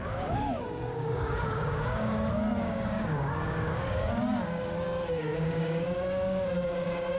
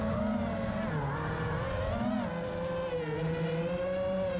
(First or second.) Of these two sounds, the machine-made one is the first